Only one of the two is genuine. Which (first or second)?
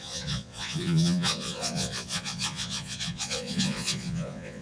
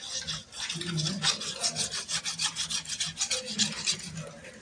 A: second